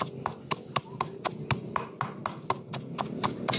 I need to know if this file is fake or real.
real